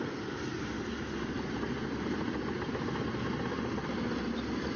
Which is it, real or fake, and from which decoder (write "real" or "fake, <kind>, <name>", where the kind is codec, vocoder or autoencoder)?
fake, vocoder, BigVGAN v2